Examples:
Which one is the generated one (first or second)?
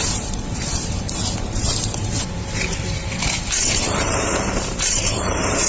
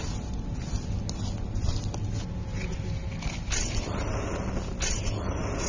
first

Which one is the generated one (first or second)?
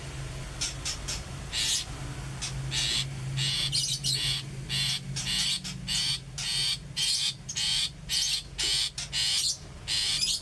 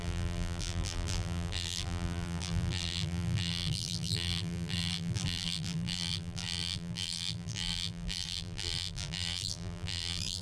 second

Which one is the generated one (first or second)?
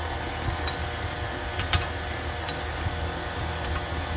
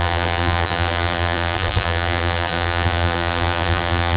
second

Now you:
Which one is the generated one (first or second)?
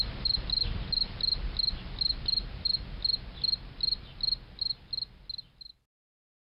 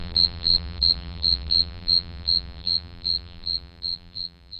second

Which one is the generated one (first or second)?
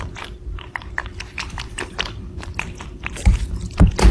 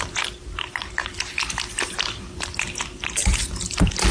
first